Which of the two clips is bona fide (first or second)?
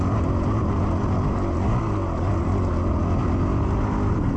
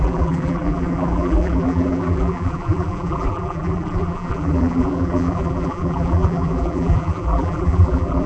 first